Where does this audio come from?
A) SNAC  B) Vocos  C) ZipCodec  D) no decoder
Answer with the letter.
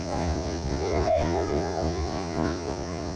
B